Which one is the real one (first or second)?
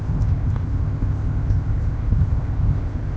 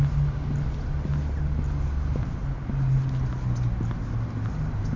second